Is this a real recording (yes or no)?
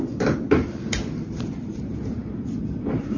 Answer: no